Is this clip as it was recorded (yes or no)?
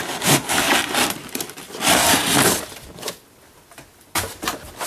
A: yes